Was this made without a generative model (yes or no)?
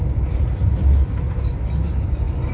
yes